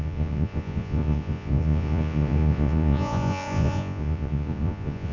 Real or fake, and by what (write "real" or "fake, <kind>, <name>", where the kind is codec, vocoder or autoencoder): fake, vocoder, Vocos